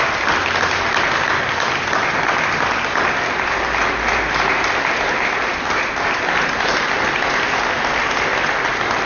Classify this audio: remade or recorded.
recorded